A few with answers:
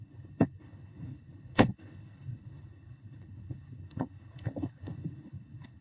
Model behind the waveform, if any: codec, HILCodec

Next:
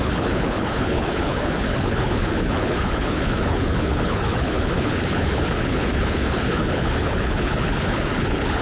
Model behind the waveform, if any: codec, HILCodec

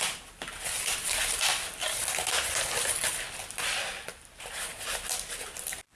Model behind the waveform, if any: none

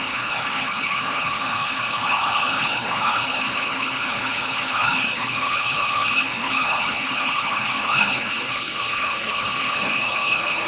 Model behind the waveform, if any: codec, HILCodec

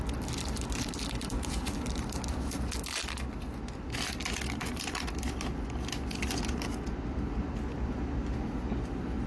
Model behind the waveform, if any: none